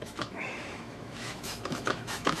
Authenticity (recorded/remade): remade